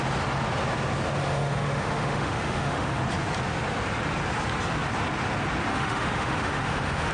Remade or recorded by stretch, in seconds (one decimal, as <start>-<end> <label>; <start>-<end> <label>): 0.0-1.2 recorded; 1.2-3.0 remade; 3.0-5.7 recorded; 5.7-7.1 remade